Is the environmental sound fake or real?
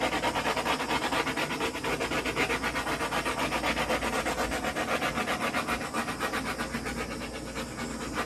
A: real